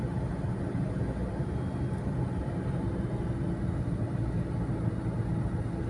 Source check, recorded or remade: recorded